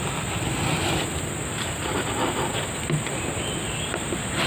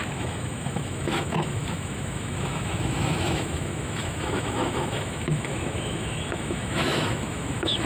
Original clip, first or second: first